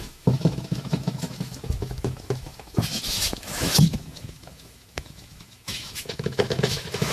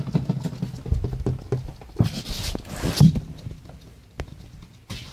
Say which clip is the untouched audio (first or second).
second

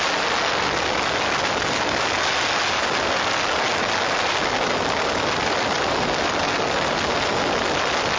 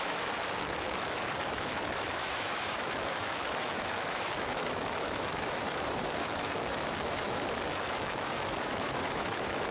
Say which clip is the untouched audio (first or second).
first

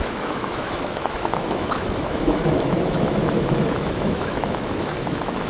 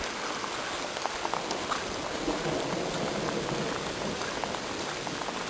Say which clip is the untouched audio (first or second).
second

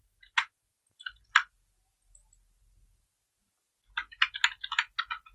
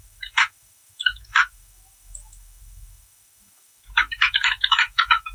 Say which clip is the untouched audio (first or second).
first